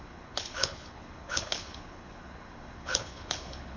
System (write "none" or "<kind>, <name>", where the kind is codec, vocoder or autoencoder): codec, HILCodec